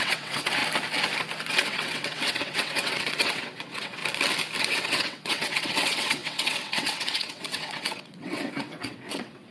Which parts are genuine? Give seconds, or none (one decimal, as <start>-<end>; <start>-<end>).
0.6-1.5; 4.0-4.6